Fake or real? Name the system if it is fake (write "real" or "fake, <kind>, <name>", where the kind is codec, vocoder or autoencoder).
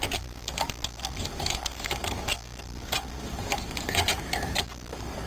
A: fake, codec, DAC